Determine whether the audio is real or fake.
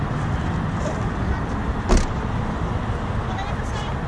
fake